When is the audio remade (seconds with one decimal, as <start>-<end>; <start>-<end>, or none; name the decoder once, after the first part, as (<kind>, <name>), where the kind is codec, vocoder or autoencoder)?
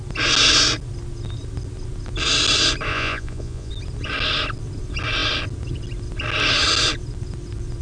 2.9-3.7 (vocoder, Vocos)